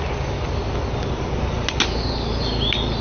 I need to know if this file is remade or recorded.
recorded